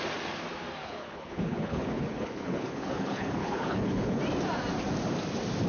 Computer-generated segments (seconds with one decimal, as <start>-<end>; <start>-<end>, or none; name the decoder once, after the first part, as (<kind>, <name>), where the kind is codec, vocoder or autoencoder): 0.8-4.2 (codec, HILCodec)